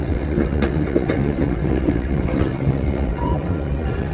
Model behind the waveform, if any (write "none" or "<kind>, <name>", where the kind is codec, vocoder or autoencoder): vocoder, WaveNeXt